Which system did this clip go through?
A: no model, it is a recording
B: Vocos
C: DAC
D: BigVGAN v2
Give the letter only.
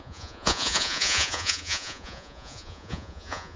B